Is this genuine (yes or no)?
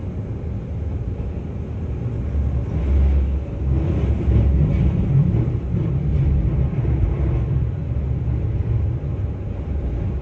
yes